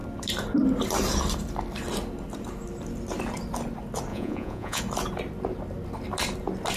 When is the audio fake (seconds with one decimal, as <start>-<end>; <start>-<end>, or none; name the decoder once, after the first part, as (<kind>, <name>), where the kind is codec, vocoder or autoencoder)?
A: 4.1-4.8 (vocoder, Vocos)